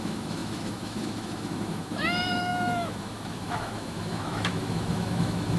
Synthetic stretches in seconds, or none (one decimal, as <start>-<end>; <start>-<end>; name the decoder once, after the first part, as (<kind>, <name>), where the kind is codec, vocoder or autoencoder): 0.0-5.6 (autoencoder, DAC-VAE)